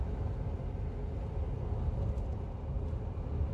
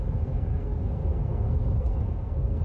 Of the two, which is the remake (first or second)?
second